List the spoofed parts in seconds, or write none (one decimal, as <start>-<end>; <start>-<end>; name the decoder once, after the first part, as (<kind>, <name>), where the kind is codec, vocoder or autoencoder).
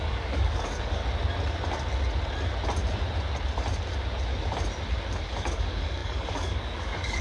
0.0-1.0 (codec, DAC); 5.1-7.2